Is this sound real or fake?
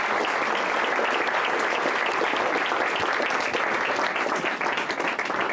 real